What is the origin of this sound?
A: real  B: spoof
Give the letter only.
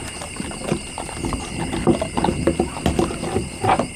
A